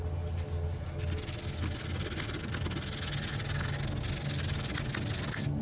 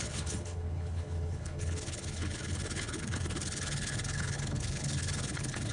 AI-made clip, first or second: second